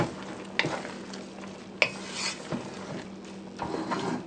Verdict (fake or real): real